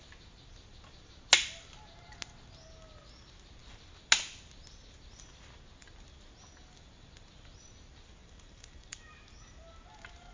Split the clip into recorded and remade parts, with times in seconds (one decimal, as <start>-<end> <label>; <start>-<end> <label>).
0.0-8.2 recorded; 8.2-9.1 remade; 9.1-10.3 recorded